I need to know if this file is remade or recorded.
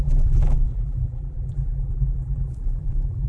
remade